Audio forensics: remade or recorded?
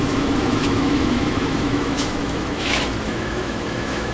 remade